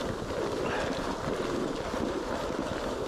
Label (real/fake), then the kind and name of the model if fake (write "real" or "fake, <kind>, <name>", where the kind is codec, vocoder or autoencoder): real